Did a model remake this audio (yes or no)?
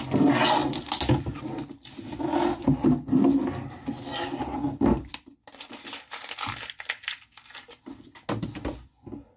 no